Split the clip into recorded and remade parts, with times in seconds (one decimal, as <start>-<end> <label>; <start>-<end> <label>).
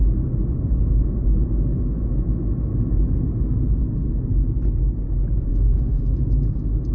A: 0.0-5.5 recorded; 5.5-6.2 remade; 6.2-6.9 recorded